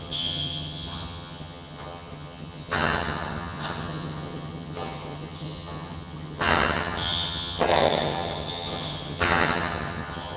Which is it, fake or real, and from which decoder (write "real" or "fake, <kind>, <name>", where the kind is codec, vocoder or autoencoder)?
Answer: fake, vocoder, HiFi-GAN